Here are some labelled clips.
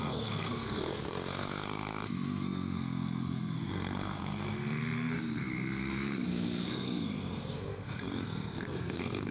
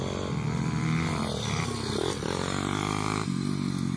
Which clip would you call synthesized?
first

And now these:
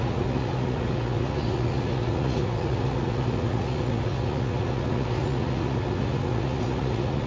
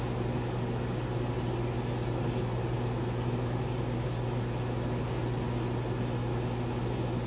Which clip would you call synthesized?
first